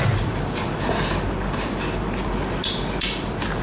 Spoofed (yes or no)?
no